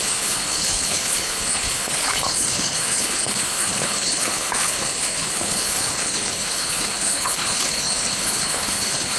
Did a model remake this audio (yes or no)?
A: yes